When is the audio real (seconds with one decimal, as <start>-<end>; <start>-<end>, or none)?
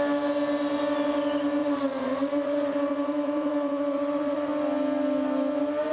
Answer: 0.0-1.6; 4.5-5.9